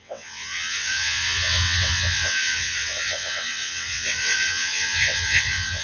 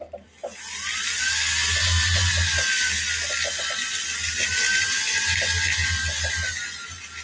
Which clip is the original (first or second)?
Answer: second